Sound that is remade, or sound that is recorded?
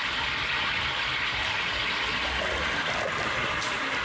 recorded